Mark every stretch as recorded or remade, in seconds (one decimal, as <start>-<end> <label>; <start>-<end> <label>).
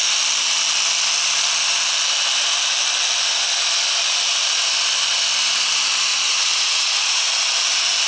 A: 0.0-6.1 recorded; 6.1-7.3 remade; 7.3-8.1 recorded